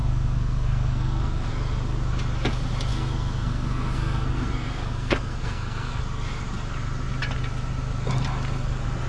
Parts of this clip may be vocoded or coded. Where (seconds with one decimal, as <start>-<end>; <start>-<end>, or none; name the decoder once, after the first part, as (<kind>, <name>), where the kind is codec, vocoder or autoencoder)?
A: 0.0-1.5 (codec, SNAC); 2.9-6.0